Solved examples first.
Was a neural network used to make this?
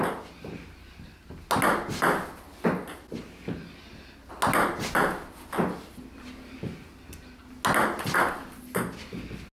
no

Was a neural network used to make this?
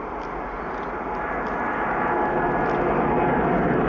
no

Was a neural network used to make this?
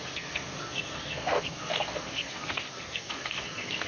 yes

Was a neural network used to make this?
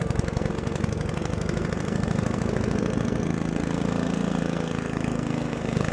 yes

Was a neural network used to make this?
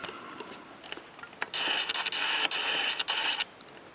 no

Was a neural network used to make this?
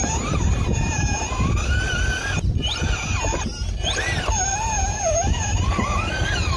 no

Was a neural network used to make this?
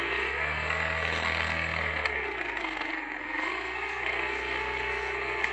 yes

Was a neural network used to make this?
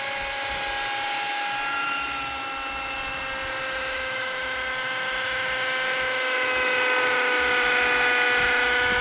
no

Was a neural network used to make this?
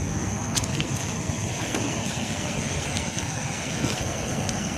yes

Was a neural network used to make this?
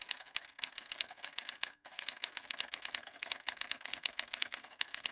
yes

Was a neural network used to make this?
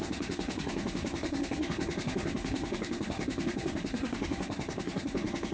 yes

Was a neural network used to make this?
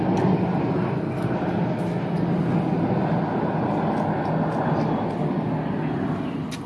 no